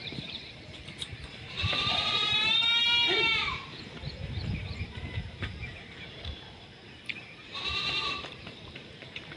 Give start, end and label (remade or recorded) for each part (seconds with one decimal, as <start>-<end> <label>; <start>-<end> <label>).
0.0-9.4 remade